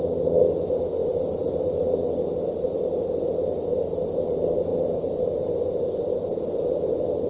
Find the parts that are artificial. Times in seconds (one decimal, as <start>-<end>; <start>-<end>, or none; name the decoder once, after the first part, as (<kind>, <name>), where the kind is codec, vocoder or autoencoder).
4.7-7.3 (vocoder, BigVGAN v2)